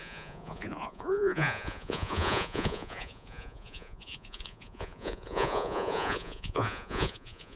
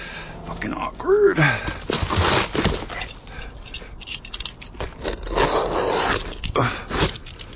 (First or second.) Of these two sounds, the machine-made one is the first